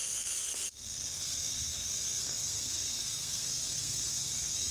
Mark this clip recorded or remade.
remade